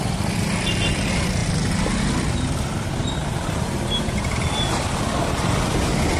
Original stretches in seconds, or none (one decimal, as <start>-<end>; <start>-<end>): 0.0-3.2; 4.6-6.2